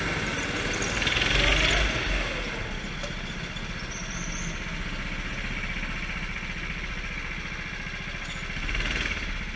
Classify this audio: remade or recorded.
recorded